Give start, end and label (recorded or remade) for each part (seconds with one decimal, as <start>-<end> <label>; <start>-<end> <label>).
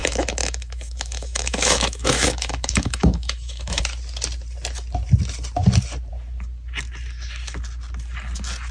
0.0-3.8 remade; 3.8-8.7 recorded